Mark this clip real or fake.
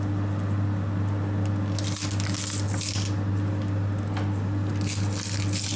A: real